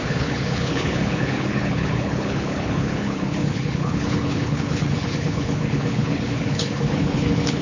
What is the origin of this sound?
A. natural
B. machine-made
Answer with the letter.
B